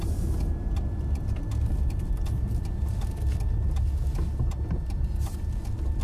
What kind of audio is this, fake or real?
real